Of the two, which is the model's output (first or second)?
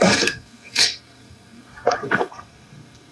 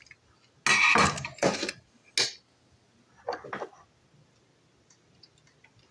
first